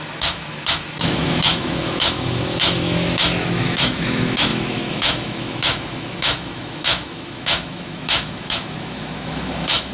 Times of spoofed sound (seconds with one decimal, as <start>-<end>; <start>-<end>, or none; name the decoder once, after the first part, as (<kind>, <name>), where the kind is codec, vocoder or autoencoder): 0.0-9.9 (autoencoder, DAC-VAE)